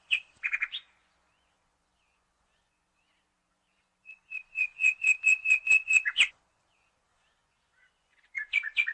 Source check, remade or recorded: remade